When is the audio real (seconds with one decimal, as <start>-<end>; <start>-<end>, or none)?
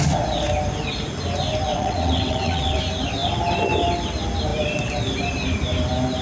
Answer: 0.0-1.7; 2.8-6.2